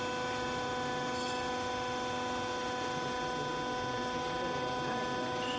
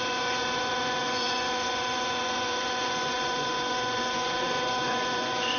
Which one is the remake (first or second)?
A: second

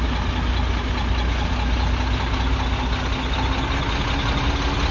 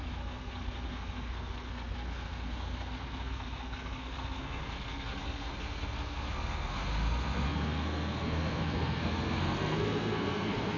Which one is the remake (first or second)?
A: second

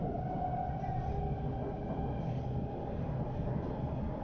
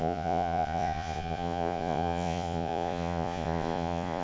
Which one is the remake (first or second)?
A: second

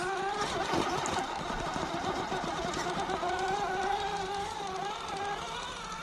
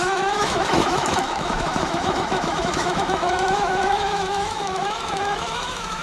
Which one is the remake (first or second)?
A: second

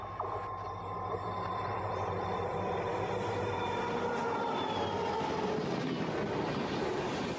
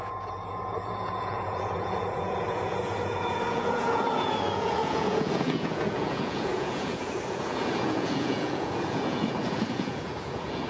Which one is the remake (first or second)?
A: second